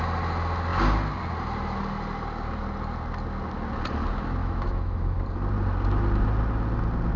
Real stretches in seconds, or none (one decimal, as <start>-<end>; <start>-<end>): 0.0-4.4; 5.2-7.2

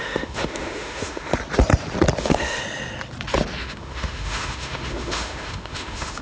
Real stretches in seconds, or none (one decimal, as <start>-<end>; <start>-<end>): 1.3-2.2; 2.6-3.6

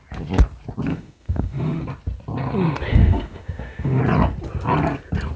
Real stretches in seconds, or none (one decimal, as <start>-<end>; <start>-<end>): 0.0-0.9; 1.8-2.9; 4.0-5.4

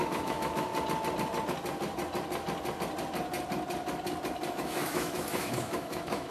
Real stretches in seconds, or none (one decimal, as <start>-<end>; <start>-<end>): 0.7-4.5